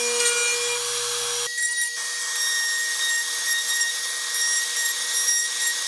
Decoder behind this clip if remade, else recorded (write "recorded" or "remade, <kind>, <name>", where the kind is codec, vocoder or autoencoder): recorded